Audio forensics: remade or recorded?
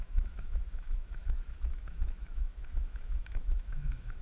remade